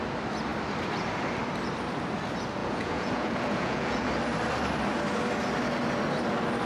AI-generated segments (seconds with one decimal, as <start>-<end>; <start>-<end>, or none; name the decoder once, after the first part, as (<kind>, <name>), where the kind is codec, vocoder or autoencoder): 2.6-4.1 (vocoder, Vocos)